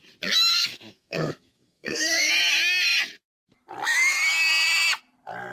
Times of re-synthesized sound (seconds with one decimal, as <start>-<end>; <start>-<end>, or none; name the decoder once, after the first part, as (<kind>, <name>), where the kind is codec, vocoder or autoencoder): 0.5-2.3 (codec, SNAC)